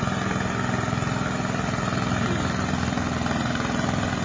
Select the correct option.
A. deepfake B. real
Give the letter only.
B